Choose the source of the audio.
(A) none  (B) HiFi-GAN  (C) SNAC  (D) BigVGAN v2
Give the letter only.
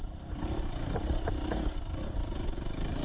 A